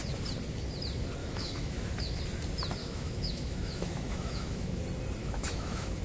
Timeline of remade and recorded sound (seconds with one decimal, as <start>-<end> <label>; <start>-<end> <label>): 0.0-1.2 recorded; 1.2-2.2 remade; 2.2-2.8 recorded; 2.8-4.8 remade; 4.8-5.2 recorded; 5.2-6.0 remade